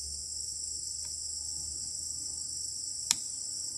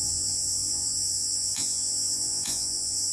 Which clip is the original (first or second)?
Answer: first